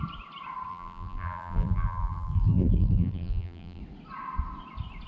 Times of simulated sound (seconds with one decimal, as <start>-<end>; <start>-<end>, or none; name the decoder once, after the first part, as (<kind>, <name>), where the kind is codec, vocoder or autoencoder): 0.7-3.8 (vocoder, BigVGAN v2)

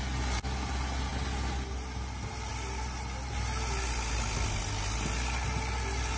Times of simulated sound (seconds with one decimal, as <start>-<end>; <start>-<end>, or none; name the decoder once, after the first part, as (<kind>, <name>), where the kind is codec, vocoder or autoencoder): none

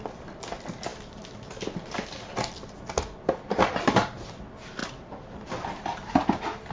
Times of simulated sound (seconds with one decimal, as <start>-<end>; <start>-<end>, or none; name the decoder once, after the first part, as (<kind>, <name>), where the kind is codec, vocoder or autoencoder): none

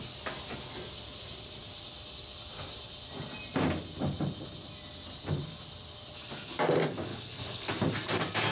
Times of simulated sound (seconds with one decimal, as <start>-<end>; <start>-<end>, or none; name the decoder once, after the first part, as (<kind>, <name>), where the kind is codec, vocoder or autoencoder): 7.1-7.7 (codec, HILCodec)

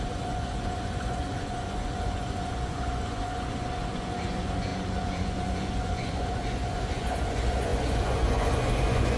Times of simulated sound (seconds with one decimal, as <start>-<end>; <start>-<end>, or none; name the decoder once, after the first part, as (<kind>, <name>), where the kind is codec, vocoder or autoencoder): 0.0-9.2 (vocoder, Vocos)